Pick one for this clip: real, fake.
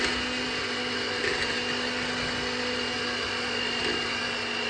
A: real